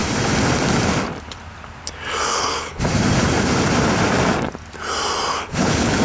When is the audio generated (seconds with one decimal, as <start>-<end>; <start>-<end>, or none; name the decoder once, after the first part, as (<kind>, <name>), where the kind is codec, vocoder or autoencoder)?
2.3-2.8 (codec, HILCodec); 5.3-6.0